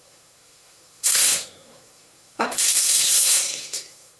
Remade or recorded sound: remade